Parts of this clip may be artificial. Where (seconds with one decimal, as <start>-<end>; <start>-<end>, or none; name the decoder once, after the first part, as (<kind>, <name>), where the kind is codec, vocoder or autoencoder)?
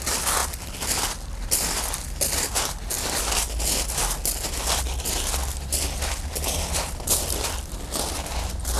none